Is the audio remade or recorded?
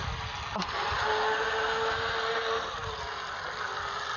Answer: recorded